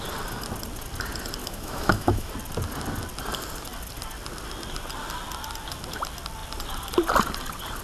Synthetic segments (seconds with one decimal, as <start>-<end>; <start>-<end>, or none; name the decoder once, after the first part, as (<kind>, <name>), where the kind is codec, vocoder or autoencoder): 1.4-2.3 (autoencoder, DAC-VAE)